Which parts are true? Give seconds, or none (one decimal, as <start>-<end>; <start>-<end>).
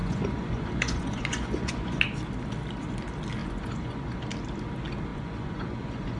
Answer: 2.0-3.4; 4.2-5.1